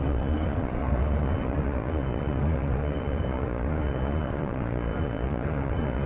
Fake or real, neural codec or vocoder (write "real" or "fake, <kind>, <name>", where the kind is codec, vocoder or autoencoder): fake, vocoder, Vocos